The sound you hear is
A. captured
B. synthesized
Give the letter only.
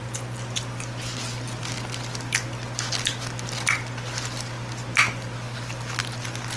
A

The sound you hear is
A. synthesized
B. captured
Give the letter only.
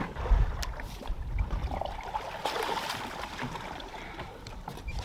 A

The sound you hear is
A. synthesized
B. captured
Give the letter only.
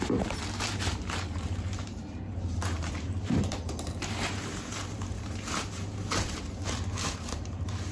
A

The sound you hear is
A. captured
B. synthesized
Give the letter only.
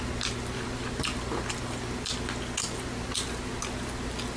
A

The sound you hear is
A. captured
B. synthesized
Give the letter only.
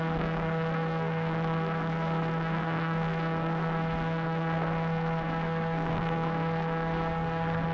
B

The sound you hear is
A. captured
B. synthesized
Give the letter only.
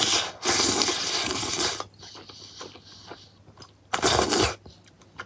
A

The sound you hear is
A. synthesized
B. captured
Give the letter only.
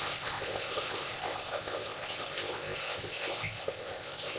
A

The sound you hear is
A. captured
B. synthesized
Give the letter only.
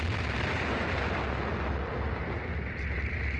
A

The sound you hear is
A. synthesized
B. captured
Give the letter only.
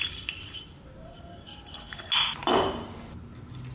B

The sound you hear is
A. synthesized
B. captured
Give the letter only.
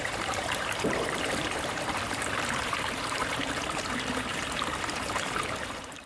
A